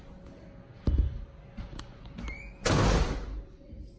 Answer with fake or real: real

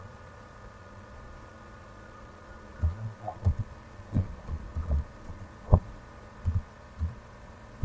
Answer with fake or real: fake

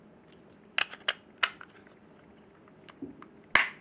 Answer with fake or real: real